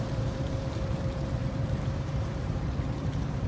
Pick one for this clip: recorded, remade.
remade